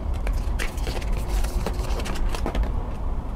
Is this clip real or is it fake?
fake